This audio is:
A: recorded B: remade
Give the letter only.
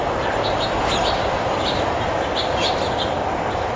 A